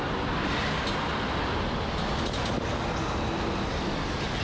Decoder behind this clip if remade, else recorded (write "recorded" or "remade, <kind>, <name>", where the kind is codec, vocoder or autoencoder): recorded